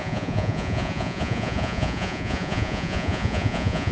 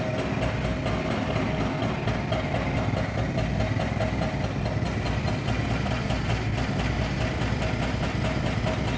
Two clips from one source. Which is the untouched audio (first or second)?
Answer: second